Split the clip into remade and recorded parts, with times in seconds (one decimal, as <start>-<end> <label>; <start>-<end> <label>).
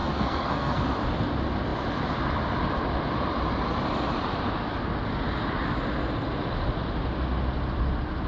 0.0-0.8 remade; 0.8-8.3 recorded